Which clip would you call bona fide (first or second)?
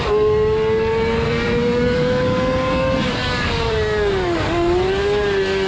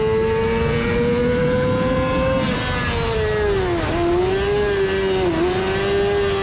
second